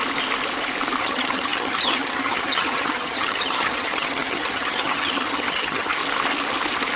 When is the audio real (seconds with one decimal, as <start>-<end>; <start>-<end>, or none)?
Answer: 0.0-1.0; 6.0-7.0